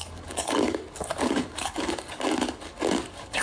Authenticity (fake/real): fake